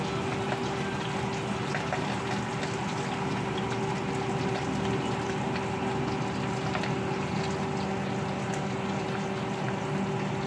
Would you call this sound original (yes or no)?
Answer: yes